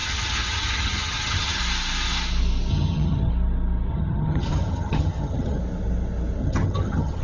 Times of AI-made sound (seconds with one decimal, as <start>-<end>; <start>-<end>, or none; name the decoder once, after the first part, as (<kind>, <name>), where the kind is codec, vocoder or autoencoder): 0.0-1.6 (vocoder, HiFi-GAN); 2.7-3.3; 3.9-5.6; 6.4-7.2